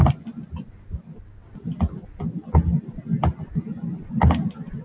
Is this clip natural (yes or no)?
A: yes